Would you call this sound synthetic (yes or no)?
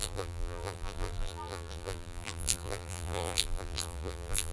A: yes